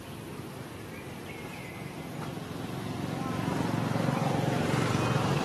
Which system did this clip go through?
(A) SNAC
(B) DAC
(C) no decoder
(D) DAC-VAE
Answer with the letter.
C